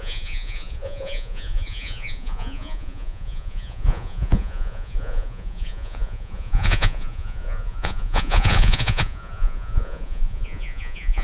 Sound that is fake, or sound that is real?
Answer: fake